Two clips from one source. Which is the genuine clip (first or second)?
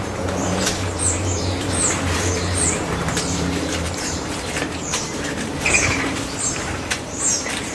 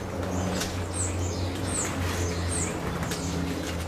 second